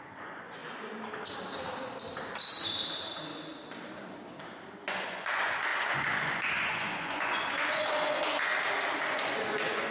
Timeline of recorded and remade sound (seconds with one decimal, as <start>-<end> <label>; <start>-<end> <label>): 0.0-0.6 remade; 0.6-4.7 recorded; 4.7-8.5 remade; 8.5-9.1 recorded; 9.1-9.9 remade